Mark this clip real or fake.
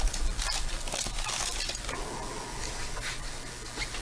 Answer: real